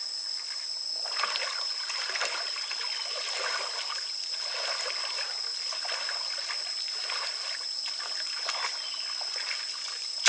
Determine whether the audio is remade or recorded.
recorded